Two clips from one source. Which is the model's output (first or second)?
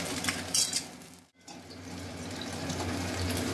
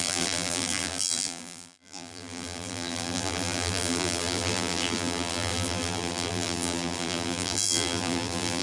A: second